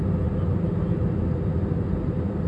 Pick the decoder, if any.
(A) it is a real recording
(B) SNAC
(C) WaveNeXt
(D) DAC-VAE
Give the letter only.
A